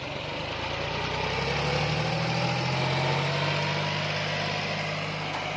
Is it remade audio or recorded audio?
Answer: recorded